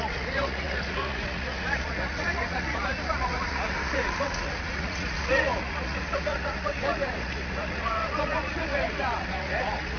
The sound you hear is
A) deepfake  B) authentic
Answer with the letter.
A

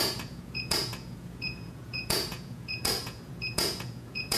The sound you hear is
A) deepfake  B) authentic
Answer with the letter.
A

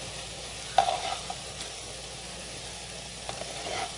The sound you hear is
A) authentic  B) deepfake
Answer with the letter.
A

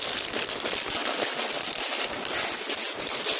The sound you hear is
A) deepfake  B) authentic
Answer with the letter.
B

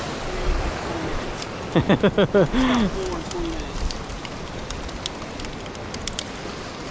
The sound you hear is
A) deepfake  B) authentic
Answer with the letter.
B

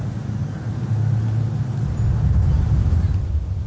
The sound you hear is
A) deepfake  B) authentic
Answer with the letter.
B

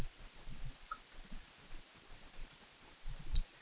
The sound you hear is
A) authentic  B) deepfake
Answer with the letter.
B